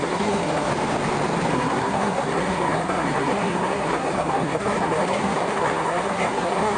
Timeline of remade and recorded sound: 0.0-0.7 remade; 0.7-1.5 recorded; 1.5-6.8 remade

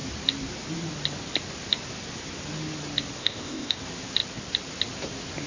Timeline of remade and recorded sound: 0.0-3.2 recorded; 3.2-3.8 remade; 3.8-5.5 recorded